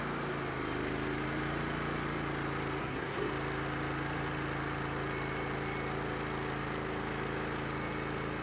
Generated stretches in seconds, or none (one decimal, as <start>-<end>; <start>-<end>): 2.8-3.3